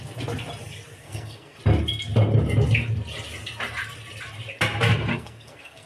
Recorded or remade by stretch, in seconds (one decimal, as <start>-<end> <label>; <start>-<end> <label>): 0.0-1.0 recorded; 1.0-1.6 remade; 1.6-5.1 recorded; 5.1-5.9 remade